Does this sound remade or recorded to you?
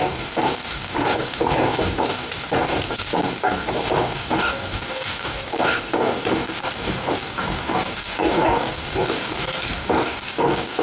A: remade